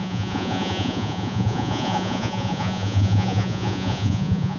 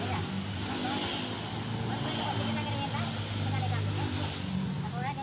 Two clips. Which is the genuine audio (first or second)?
second